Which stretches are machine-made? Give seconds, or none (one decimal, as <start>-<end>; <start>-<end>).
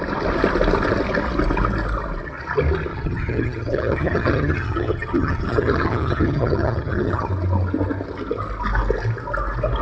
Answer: 2.9-7.3